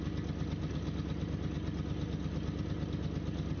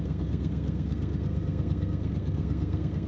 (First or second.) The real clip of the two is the first